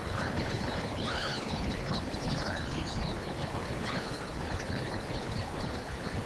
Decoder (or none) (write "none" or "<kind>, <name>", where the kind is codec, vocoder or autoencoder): codec, HILCodec